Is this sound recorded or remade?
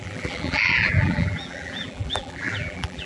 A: remade